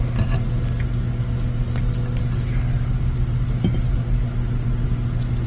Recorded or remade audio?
recorded